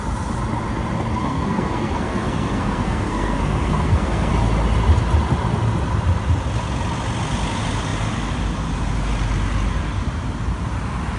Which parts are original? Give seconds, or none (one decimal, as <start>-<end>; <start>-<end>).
0.0-1.2; 4.3-11.2